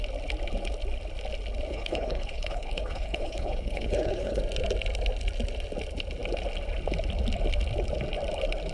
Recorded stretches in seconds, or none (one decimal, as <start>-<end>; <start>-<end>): 0.0-1.7; 4.4-8.7